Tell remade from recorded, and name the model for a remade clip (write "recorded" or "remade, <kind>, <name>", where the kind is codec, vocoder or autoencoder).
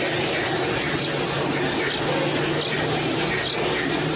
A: recorded